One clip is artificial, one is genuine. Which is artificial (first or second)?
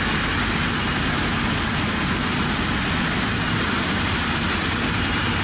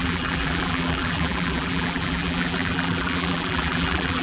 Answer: second